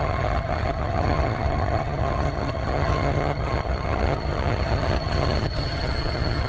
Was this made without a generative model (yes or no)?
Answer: no